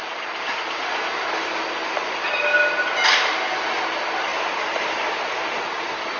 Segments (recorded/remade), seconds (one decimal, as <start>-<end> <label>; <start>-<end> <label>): 0.0-6.2 recorded